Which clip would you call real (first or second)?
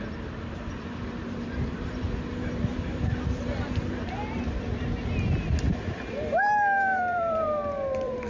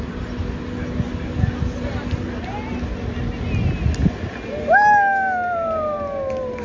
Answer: second